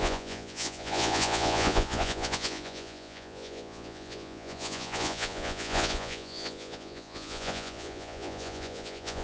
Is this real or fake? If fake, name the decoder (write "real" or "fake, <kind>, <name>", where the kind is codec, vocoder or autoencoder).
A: fake, vocoder, Vocos